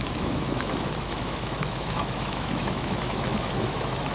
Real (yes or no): no